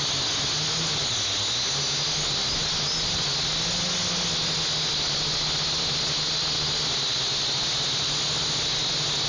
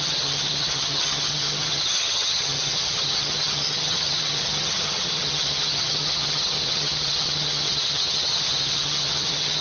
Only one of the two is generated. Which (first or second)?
second